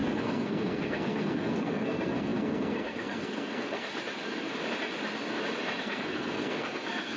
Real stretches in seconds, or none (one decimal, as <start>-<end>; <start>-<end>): 3.9-5.8